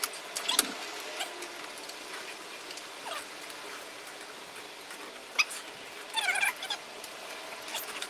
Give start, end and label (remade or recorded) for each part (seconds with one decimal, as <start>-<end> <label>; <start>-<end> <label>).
0.0-5.2 recorded; 5.2-5.9 remade; 5.9-8.1 recorded